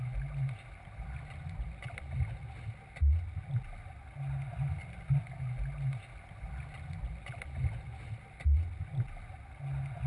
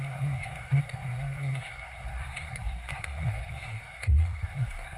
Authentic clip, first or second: first